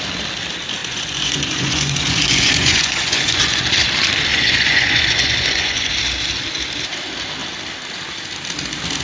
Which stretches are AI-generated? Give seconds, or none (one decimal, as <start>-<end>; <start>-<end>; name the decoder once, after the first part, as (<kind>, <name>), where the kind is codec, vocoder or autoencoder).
0.8-3.7 (vocoder, Vocos); 4.3-5.9